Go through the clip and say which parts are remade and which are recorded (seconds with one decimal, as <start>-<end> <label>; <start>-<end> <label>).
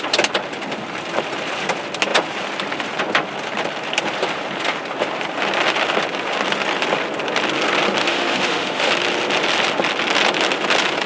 0.0-8.0 recorded; 8.0-8.9 remade; 8.9-11.1 recorded